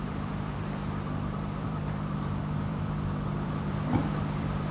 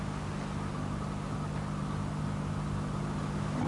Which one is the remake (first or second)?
first